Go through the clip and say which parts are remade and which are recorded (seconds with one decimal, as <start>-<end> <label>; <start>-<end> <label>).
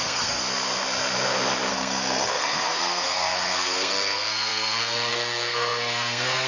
0.0-0.4 remade; 0.4-1.7 recorded; 1.7-6.5 remade